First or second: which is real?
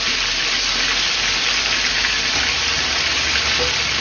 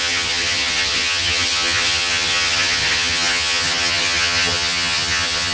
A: first